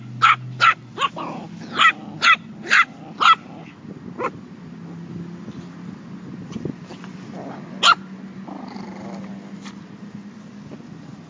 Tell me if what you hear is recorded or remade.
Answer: recorded